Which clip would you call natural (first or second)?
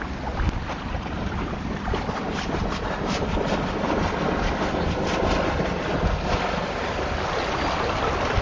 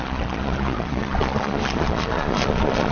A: first